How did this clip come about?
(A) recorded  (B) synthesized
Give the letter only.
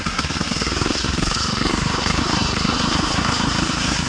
B